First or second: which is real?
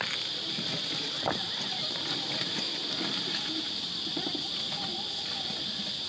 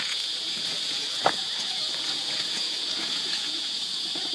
first